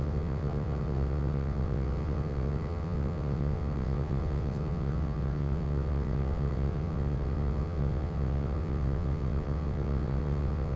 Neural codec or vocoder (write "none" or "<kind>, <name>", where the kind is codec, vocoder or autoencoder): vocoder, WaveNeXt